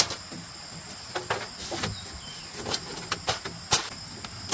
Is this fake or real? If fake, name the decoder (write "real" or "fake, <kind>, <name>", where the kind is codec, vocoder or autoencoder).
real